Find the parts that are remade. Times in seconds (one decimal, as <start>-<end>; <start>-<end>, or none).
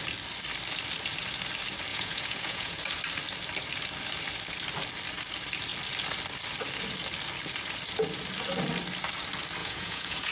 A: 1.9-2.8; 9.6-10.3